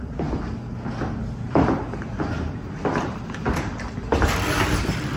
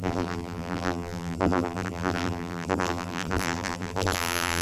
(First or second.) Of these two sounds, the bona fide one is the first